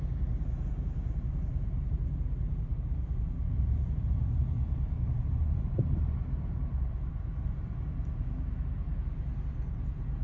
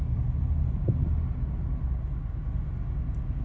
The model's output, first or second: first